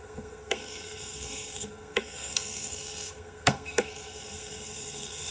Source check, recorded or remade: remade